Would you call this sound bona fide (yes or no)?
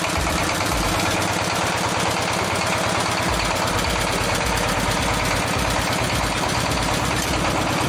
yes